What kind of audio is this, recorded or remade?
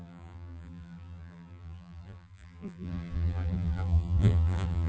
remade